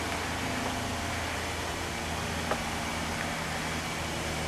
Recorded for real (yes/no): yes